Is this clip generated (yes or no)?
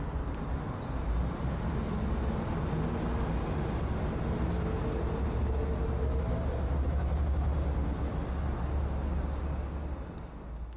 no